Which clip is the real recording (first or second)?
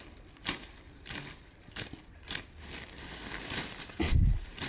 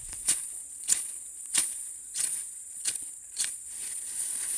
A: first